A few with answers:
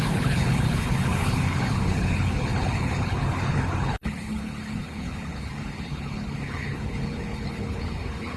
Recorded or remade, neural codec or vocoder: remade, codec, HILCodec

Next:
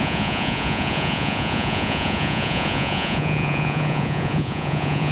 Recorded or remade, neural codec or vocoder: remade, vocoder, Vocos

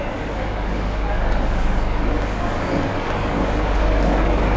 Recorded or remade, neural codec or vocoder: remade, codec, DAC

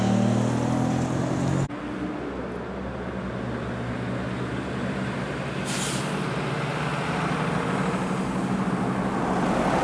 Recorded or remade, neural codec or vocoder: recorded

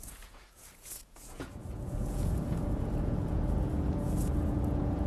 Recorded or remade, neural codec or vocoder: remade, vocoder, Vocos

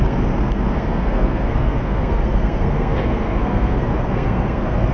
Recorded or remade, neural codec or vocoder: remade, codec, SNAC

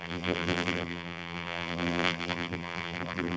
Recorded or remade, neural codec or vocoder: remade, vocoder, BigVGAN v2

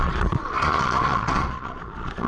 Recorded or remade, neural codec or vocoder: remade, vocoder, Vocos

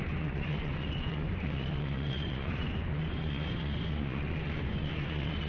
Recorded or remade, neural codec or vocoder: remade, vocoder, Vocos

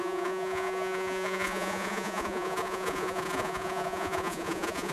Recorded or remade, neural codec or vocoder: remade, vocoder, Vocos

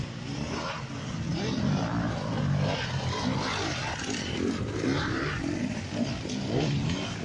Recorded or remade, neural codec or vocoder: recorded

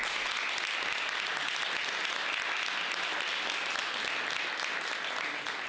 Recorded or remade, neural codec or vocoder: recorded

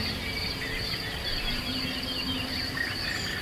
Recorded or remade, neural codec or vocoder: recorded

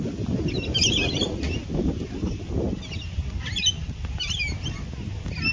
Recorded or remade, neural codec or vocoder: recorded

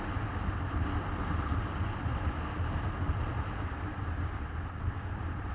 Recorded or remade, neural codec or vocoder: recorded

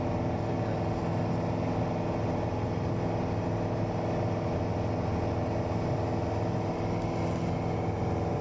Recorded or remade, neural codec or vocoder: recorded